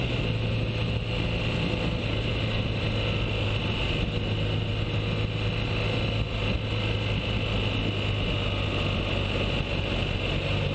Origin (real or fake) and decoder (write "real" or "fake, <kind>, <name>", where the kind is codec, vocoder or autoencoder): real